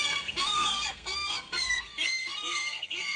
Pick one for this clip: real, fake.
fake